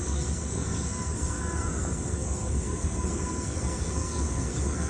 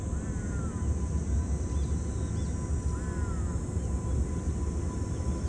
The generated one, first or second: first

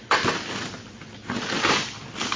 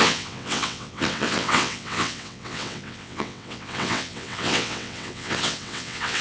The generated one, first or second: second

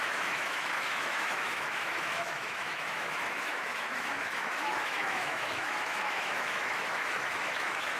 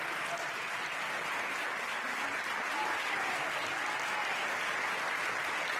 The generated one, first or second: first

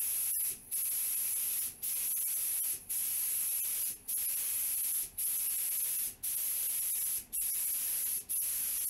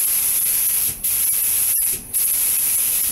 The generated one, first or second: second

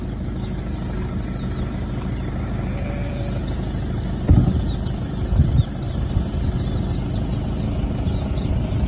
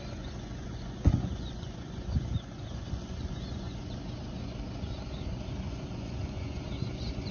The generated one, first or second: second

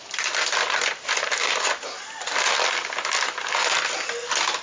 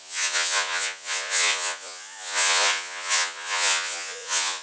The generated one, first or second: second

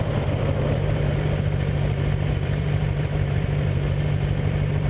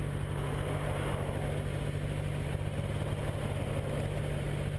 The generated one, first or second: first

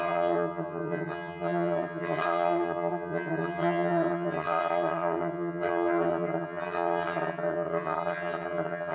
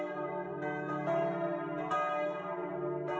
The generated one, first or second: first